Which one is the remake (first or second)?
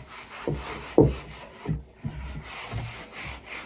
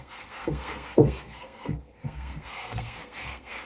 second